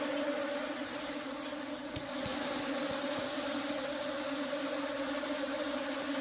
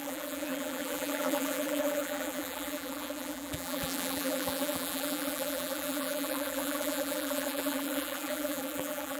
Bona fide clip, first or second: first